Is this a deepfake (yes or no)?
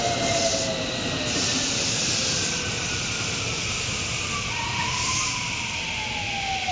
no